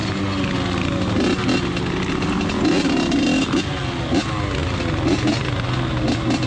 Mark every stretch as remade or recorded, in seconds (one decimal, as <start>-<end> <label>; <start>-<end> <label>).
0.0-6.5 recorded